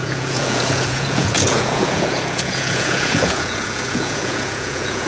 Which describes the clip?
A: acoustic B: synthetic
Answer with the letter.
B